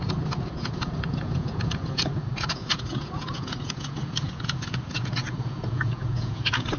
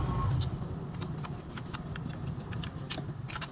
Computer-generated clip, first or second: first